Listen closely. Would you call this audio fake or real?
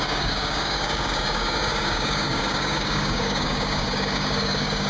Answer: fake